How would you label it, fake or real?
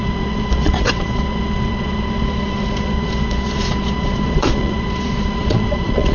fake